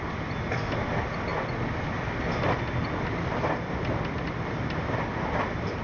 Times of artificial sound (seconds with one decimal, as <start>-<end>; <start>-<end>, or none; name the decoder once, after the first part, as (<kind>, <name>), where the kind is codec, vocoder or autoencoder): none